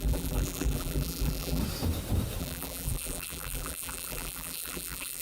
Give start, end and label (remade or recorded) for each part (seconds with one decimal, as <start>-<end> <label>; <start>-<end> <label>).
0.0-1.6 remade; 1.6-2.4 recorded; 2.4-5.2 remade